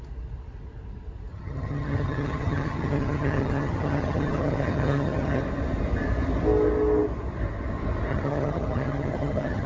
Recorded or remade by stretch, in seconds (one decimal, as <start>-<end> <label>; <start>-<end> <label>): 0.0-1.3 recorded; 1.3-5.4 remade; 5.4-8.1 recorded; 8.1-9.7 remade